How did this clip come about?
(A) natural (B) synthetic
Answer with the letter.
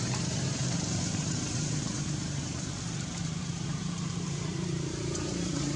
B